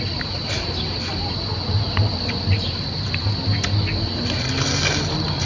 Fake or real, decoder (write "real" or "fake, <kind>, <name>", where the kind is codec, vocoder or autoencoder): real